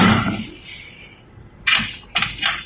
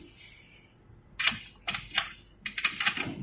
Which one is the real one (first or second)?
second